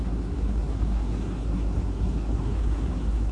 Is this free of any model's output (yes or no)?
no